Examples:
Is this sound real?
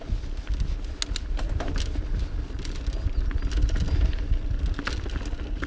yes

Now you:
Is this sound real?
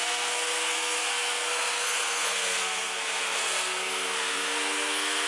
no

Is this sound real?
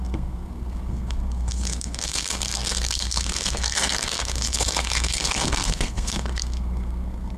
no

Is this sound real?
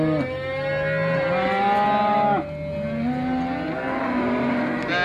yes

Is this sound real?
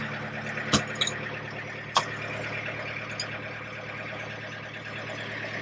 yes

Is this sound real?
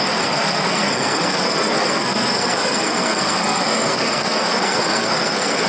no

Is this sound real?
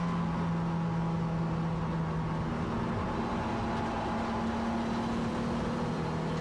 yes